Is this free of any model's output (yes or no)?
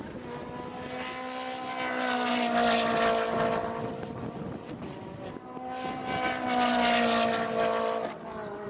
yes